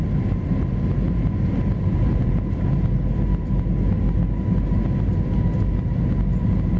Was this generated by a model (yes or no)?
no